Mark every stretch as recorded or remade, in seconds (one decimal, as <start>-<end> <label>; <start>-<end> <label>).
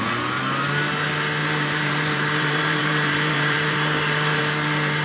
0.0-1.4 recorded; 1.4-4.4 remade; 4.4-5.0 recorded